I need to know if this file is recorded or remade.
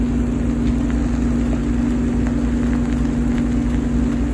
recorded